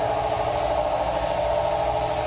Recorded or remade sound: recorded